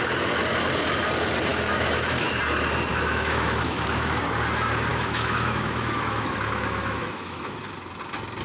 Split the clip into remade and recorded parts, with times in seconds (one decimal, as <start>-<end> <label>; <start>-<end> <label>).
0.0-1.5 recorded; 1.5-2.4 remade; 2.4-2.9 recorded; 2.9-4.2 remade; 4.2-4.9 recorded; 4.9-7.6 remade; 7.6-8.4 recorded

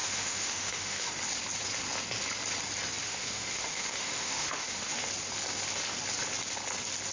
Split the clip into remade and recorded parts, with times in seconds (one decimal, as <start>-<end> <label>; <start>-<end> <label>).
0.0-1.1 remade; 1.1-3.0 recorded; 3.0-5.1 remade; 5.1-7.1 recorded

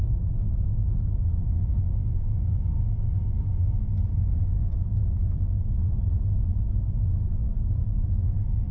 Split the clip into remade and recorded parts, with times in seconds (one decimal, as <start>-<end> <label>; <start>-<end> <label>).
0.0-5.0 remade; 5.0-5.9 recorded; 5.9-8.7 remade

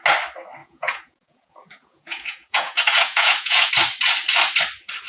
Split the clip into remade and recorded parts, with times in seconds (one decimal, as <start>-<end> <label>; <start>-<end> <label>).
0.0-0.6 recorded; 0.6-3.7 remade; 3.7-5.1 recorded

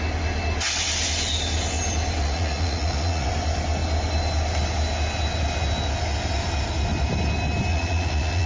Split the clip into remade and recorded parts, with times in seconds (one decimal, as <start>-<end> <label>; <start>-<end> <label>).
0.0-2.2 recorded; 2.2-3.3 remade; 3.3-7.7 recorded; 7.7-8.5 remade

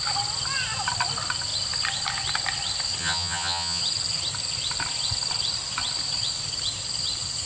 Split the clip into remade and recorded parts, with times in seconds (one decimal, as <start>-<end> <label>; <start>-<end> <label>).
0.0-3.0 recorded; 3.0-3.8 remade; 3.8-7.5 recorded

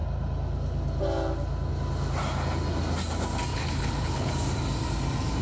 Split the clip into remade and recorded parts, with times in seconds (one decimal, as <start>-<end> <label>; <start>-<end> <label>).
0.0-3.5 recorded; 3.5-4.3 remade; 4.3-5.4 recorded